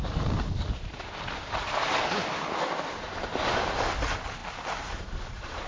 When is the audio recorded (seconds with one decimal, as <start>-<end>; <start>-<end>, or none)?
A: 0.0-5.7